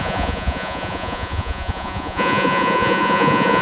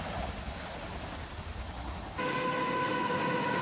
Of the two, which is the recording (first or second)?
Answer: second